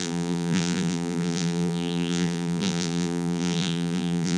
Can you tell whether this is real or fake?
fake